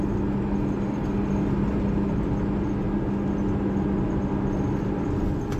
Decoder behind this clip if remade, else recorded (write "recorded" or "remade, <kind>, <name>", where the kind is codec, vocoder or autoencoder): recorded